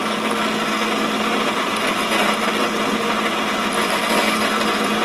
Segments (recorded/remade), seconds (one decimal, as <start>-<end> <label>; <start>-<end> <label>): 0.0-5.0 recorded